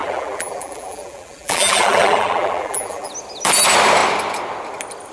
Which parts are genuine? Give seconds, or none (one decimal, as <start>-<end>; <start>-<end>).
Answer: 3.1-5.1